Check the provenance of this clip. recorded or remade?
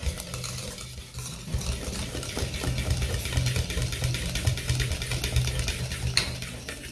recorded